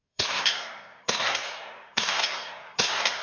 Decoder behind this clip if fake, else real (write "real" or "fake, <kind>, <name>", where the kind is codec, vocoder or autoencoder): fake, codec, SNAC